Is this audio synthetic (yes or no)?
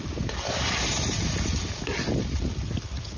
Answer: no